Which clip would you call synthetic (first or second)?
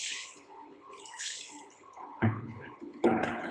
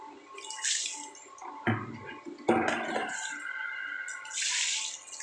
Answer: first